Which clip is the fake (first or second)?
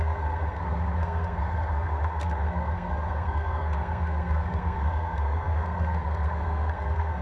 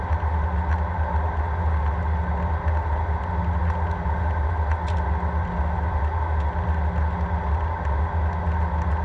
first